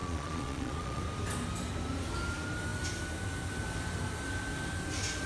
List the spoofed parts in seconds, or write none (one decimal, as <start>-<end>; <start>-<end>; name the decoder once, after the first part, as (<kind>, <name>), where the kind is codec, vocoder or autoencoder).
0.0-1.0 (vocoder, Vocos)